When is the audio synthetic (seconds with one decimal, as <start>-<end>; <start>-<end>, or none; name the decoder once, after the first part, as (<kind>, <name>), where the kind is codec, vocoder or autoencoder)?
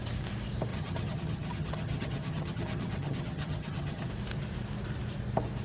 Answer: 0.7-4.1 (vocoder, HiFi-GAN)